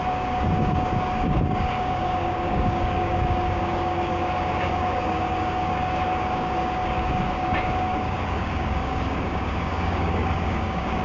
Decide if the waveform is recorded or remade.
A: remade